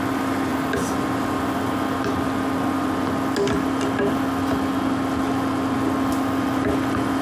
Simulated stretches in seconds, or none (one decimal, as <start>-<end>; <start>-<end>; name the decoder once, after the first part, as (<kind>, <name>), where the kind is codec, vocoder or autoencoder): none